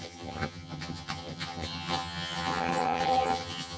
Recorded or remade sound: remade